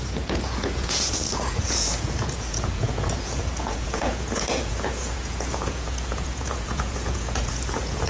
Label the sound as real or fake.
fake